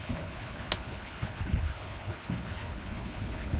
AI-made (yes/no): yes